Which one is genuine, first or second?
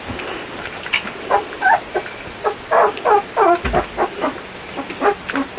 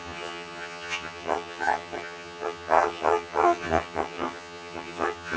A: first